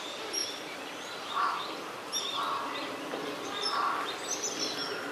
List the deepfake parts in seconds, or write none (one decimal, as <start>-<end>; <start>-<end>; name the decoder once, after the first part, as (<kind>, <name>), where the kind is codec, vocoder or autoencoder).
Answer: none